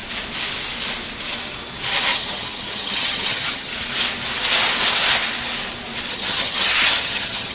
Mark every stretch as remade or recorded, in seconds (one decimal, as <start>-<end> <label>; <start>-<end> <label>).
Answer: 0.0-2.1 recorded; 2.1-3.7 remade; 3.7-6.1 recorded; 6.1-7.5 remade